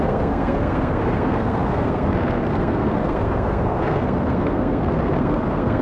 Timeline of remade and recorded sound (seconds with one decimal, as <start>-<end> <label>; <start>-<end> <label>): 0.0-5.8 remade

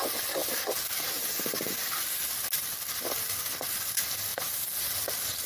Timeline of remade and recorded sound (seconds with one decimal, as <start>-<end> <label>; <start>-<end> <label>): 0.0-0.4 recorded; 0.4-2.3 remade; 2.3-4.3 recorded; 4.3-5.1 remade; 5.1-5.5 recorded

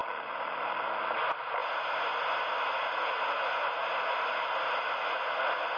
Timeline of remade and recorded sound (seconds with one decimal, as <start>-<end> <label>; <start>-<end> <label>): 0.0-0.7 remade; 0.7-3.8 recorded; 3.8-4.4 remade; 4.4-5.8 recorded

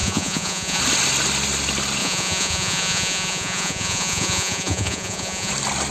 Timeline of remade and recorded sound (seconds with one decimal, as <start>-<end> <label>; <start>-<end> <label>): 0.0-0.8 remade; 0.8-2.0 recorded; 2.0-5.5 remade; 5.5-5.9 recorded

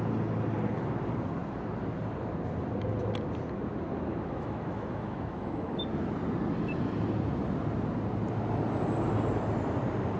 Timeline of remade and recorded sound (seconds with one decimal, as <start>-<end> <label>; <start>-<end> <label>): 0.0-4.1 recorded; 4.1-5.8 remade; 5.8-10.2 recorded

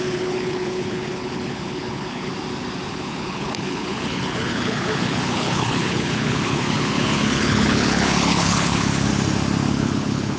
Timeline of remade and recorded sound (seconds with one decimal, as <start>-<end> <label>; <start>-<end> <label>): 0.0-2.3 remade; 2.3-2.9 recorded; 2.9-9.1 remade; 9.1-9.7 recorded; 9.7-10.4 remade

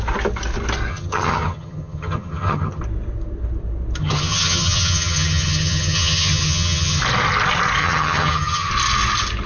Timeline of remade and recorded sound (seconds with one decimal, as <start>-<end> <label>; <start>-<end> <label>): 0.0-0.9 recorded; 0.9-2.8 remade; 2.8-4.0 recorded; 4.0-7.0 remade; 7.0-7.8 recorded; 7.8-8.7 remade; 8.7-9.5 recorded

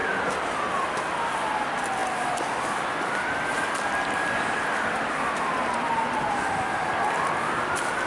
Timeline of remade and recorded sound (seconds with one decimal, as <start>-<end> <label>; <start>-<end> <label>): 0.0-8.1 recorded